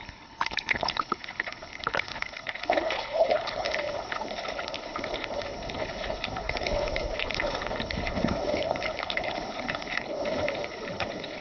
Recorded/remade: remade